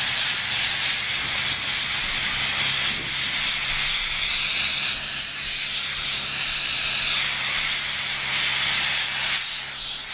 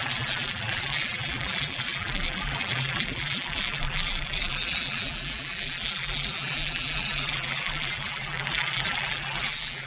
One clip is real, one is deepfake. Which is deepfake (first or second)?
second